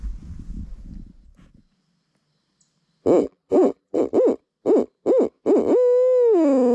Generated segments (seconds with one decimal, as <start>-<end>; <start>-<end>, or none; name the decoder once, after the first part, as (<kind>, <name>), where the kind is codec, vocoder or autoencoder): 3.2-4.0 (vocoder, BigVGAN v2)